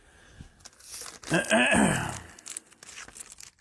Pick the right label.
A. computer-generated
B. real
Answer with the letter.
B